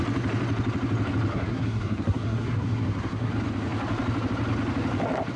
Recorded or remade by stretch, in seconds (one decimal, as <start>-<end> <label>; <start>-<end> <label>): 0.0-1.3 recorded; 1.3-3.3 remade; 3.3-5.4 recorded